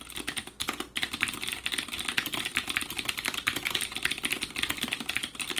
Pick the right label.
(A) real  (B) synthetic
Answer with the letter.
A